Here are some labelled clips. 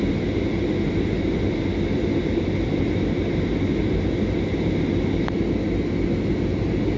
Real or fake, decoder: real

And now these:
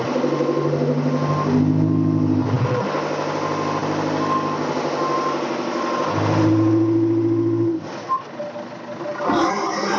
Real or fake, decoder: real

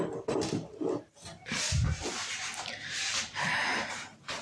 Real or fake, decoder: fake, vocoder, BigVGAN v2